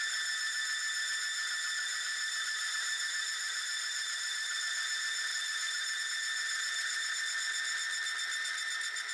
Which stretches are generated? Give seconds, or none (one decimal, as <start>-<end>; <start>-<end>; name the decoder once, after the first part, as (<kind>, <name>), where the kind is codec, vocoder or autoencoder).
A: 1.9-4.6 (vocoder, BigVGAN v2); 5.3-6.0; 6.5-7.2